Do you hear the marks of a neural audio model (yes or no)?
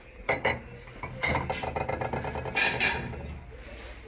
no